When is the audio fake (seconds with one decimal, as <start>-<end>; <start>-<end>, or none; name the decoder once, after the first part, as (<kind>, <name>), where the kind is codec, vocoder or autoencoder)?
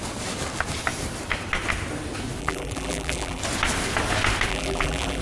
2.4-3.4 (vocoder, BigVGAN v2); 4.5-5.2